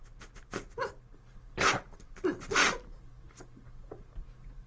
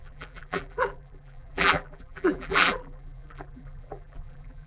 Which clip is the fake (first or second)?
second